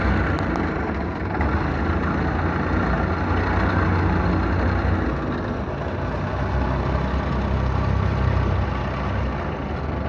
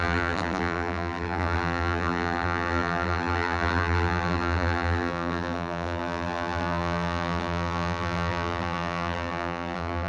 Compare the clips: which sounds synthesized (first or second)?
second